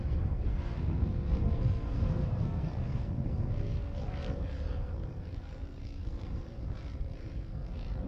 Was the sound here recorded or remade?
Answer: remade